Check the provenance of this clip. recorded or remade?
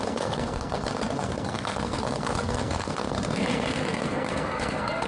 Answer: remade